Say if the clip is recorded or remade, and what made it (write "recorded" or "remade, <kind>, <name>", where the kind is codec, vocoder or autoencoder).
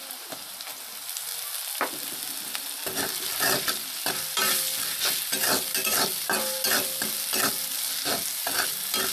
recorded